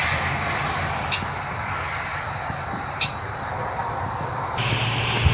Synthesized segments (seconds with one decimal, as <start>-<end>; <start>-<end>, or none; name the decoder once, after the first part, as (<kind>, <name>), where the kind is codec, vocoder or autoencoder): 2.1-3.5 (vocoder, BigVGAN v2)